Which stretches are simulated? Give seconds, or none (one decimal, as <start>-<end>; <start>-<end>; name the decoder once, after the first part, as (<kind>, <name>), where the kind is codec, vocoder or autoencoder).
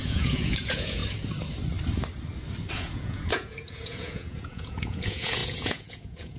0.0-1.0 (vocoder, Vocos); 2.7-6.4